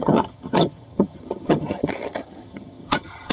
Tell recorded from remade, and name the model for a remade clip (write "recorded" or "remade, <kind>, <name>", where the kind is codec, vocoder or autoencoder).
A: remade, vocoder, HiFi-GAN